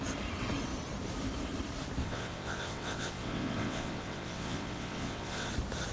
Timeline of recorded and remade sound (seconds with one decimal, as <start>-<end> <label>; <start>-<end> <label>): 0.0-2.0 recorded; 2.0-5.5 remade; 5.5-5.9 recorded